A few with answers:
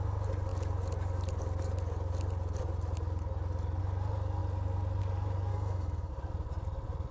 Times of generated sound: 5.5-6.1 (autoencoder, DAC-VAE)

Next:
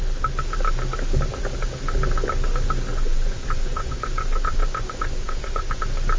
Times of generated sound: 2.9-5.8 (vocoder, Vocos)

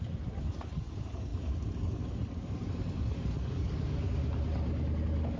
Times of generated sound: 0.0-4.2 (codec, DAC); 5.0-5.4

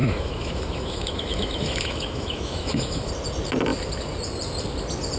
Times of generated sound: 0.0-3.1 (autoencoder, DAC-VAE)